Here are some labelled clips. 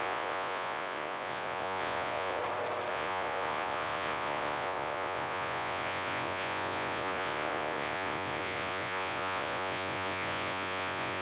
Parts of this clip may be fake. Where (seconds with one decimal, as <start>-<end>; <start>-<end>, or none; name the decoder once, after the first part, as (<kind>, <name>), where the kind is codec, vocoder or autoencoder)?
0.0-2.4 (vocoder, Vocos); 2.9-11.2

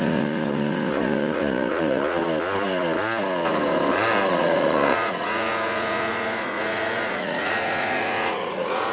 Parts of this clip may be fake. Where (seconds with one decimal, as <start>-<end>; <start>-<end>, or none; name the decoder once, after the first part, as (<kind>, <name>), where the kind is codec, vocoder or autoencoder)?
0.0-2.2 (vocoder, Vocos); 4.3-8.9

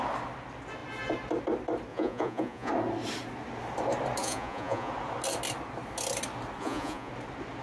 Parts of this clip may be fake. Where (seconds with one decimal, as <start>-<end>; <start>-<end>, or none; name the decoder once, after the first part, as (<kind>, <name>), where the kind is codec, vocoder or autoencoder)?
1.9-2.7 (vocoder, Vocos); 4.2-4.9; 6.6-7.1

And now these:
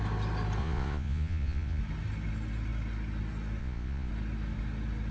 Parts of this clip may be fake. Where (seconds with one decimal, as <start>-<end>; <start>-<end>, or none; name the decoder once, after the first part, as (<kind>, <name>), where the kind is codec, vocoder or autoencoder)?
0.6-1.8 (vocoder, Vocos); 3.6-4.1